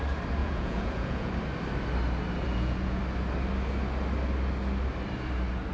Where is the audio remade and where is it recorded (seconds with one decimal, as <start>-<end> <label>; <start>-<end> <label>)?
0.0-0.4 recorded; 0.4-1.3 remade; 1.3-2.4 recorded; 2.4-3.0 remade; 3.0-5.7 recorded